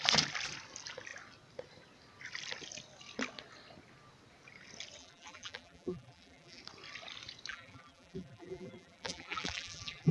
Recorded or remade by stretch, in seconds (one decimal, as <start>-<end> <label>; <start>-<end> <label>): 0.0-5.0 recorded; 5.0-6.6 remade; 6.6-7.5 recorded; 7.5-10.1 remade